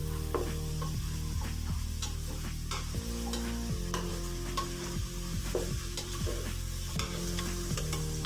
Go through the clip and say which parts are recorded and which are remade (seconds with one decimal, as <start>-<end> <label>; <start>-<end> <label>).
0.0-4.1 recorded; 4.1-7.8 remade; 7.8-8.3 recorded